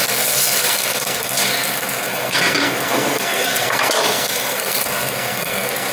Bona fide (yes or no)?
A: no